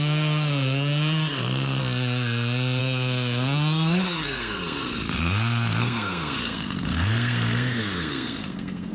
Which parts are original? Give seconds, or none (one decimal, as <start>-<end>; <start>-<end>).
1.8-2.8